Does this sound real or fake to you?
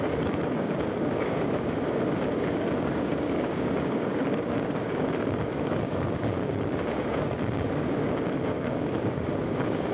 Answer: fake